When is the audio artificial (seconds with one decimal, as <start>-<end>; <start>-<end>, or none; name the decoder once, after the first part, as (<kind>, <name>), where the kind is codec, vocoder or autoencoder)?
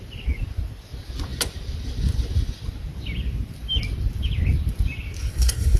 5.2-5.8 (codec, SNAC)